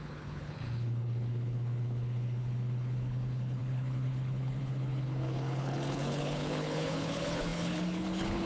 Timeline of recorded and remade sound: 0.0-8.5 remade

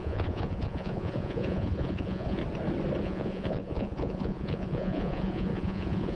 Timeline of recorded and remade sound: 0.0-2.4 remade; 2.4-3.0 recorded; 3.0-6.2 remade

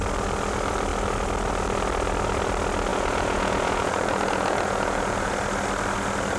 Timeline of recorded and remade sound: 0.0-2.9 recorded; 2.9-5.3 remade; 5.3-6.4 recorded